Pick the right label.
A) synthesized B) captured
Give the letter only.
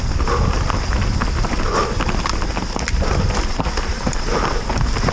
B